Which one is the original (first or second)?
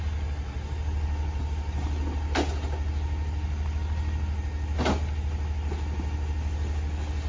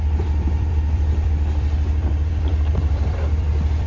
first